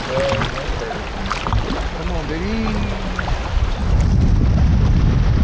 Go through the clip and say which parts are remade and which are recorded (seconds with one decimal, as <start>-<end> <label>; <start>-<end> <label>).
0.0-5.4 recorded